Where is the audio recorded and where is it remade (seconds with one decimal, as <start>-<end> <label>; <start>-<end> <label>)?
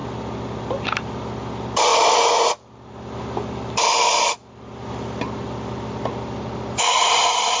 0.0-7.6 recorded